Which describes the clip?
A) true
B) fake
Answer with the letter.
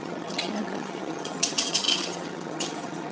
B